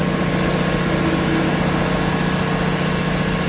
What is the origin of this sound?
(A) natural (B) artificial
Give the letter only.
A